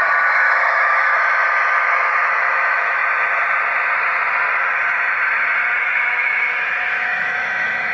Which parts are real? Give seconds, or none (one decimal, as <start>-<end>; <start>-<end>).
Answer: 3.0-5.8